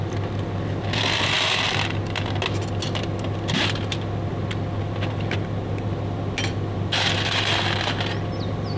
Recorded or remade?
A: recorded